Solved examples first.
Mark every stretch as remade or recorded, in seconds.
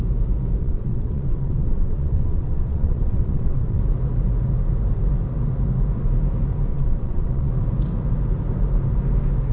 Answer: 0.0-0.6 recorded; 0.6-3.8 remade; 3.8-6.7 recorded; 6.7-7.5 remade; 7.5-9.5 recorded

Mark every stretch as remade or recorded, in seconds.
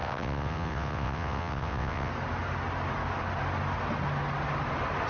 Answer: 0.0-2.1 remade; 2.1-5.1 recorded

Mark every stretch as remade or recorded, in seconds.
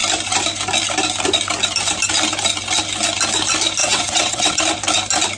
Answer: 0.0-3.8 recorded; 3.8-4.6 remade; 4.6-5.4 recorded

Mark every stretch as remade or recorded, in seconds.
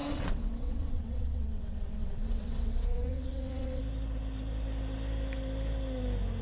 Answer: 0.0-3.8 remade; 3.8-6.4 recorded